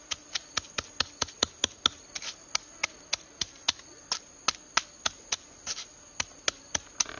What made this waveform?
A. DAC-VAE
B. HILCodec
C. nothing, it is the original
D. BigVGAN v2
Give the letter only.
C